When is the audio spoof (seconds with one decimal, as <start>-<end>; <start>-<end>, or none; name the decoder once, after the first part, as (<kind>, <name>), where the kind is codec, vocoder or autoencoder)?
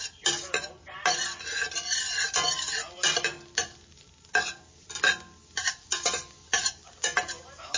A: none